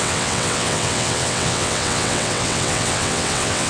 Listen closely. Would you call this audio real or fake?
fake